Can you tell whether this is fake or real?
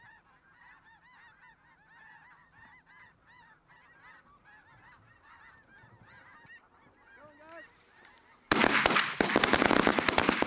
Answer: real